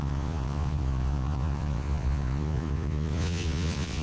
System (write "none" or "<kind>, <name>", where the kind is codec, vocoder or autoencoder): vocoder, Vocos